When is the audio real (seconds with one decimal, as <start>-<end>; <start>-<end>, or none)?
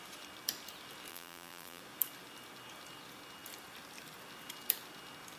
0.0-1.1; 1.8-5.4